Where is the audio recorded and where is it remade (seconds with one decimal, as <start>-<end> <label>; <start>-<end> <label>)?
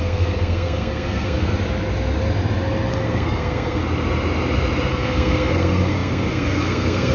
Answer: 0.0-1.5 remade; 1.5-2.9 recorded; 2.9-3.8 remade; 3.8-4.9 recorded; 4.9-7.1 remade